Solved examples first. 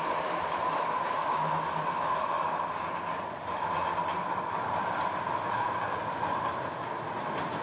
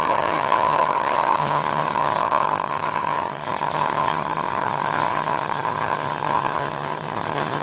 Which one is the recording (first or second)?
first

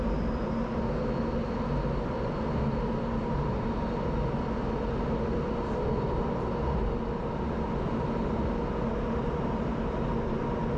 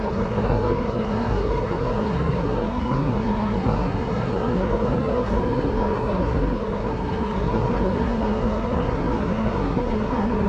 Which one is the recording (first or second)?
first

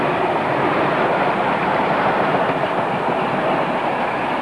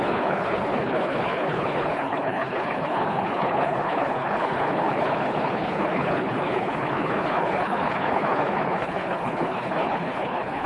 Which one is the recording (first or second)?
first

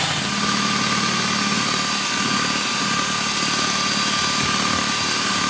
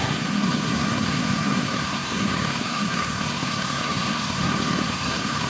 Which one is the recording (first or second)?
first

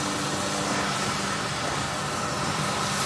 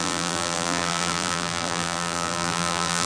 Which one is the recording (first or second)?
first